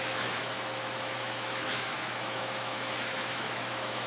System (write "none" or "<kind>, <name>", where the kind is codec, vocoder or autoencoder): autoencoder, DAC-VAE